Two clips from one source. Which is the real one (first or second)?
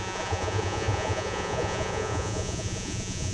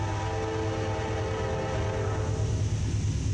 second